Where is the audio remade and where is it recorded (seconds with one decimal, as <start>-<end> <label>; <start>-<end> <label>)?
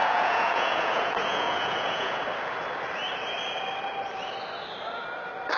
0.0-2.2 remade; 2.2-5.6 recorded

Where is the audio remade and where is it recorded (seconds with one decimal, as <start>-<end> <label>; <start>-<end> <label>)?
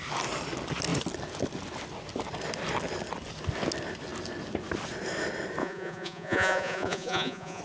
0.0-5.6 recorded; 5.6-7.6 remade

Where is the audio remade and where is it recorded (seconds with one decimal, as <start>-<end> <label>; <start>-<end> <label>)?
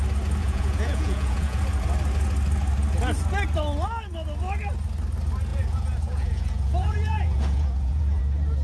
0.0-0.4 recorded; 0.4-1.6 remade; 1.6-5.5 recorded; 5.5-8.2 remade; 8.2-8.6 recorded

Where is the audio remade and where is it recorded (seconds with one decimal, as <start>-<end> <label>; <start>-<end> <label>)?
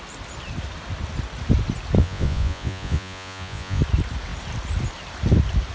0.0-2.0 recorded; 2.0-3.8 remade; 3.8-5.7 recorded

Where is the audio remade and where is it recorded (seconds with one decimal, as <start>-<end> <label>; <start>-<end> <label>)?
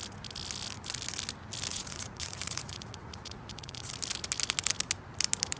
0.0-1.7 recorded; 1.7-3.9 remade; 3.9-5.6 recorded